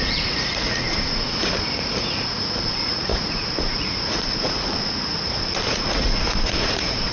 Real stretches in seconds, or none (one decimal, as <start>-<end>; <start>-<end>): none